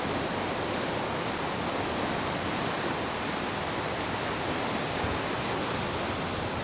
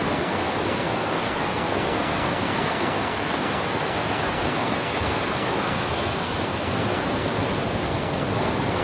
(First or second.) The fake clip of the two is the second